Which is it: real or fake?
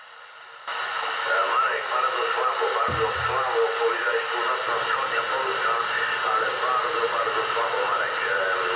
real